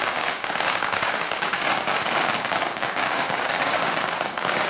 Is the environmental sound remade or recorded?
remade